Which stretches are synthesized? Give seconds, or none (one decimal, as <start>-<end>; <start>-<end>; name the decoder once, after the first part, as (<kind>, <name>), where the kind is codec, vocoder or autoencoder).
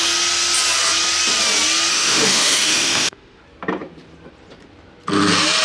1.9-3.4 (autoencoder, DAC-VAE)